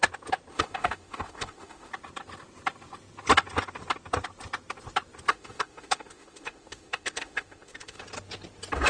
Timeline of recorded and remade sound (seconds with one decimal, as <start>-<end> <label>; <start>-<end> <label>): 0.0-0.5 recorded; 0.5-1.9 remade; 1.9-5.3 recorded; 5.3-8.0 remade; 8.0-8.9 recorded